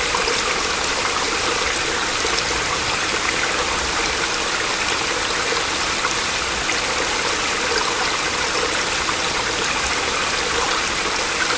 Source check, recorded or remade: recorded